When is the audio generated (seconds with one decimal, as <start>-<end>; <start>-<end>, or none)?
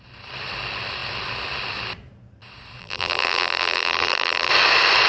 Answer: 2.8-4.5